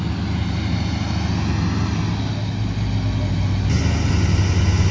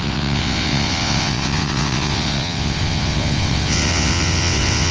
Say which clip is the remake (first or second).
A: second